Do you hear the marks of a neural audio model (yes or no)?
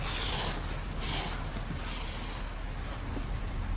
no